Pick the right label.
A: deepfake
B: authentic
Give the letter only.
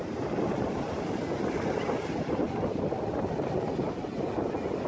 B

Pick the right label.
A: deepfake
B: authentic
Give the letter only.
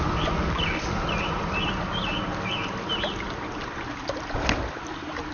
B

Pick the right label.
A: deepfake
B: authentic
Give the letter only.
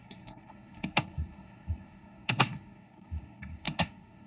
A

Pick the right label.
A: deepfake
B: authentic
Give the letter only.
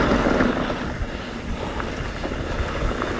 B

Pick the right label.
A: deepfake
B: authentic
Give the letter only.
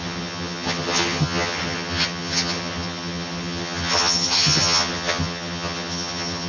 A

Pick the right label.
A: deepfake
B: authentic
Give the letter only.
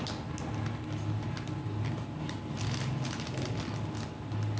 B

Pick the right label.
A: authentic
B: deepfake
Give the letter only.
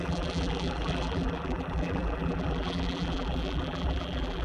B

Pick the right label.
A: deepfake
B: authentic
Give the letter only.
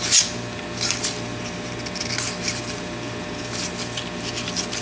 B